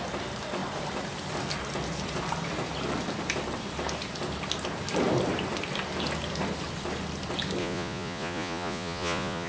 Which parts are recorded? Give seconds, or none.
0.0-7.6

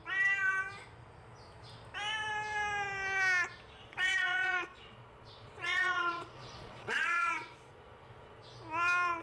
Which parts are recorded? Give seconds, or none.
0.0-3.8; 8.4-9.2

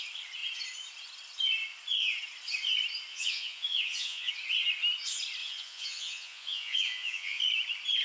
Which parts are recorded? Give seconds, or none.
0.0-3.1; 4.3-5.4; 7.4-8.0